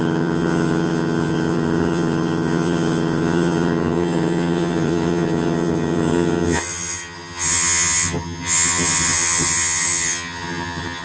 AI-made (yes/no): yes